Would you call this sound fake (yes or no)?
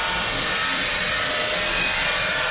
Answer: no